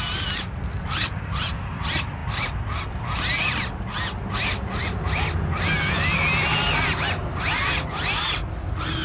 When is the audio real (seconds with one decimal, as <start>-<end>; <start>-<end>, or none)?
0.0-9.0

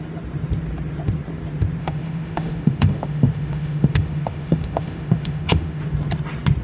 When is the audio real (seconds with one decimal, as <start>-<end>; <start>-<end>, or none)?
0.0-1.8; 5.8-6.6

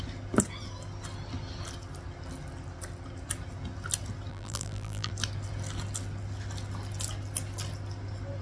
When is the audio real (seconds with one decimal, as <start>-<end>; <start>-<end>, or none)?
0.0-4.3; 5.1-8.4

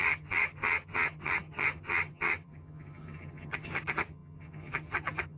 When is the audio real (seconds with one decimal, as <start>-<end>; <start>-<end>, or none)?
none

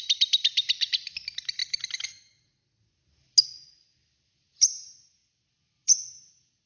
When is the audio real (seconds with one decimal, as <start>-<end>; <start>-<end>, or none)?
0.0-6.7